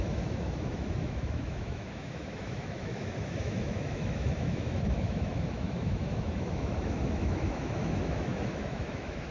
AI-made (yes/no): yes